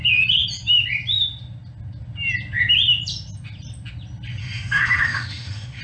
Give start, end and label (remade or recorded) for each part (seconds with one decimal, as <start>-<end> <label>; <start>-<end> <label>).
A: 0.0-4.4 recorded; 4.4-5.8 remade

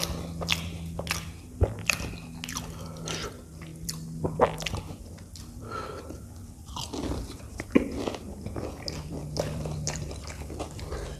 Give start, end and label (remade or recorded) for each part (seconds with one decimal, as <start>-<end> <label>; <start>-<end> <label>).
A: 0.0-11.2 recorded